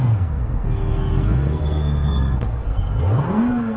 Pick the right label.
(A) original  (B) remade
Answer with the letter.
B